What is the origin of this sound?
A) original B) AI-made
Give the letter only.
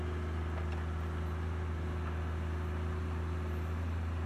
A